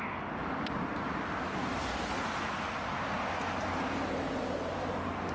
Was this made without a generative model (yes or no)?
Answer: yes